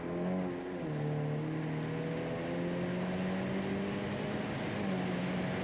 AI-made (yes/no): no